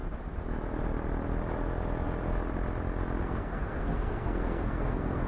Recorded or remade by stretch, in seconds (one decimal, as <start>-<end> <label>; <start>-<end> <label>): 0.0-3.2 recorded; 3.2-5.3 remade